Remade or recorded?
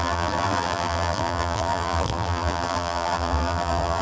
remade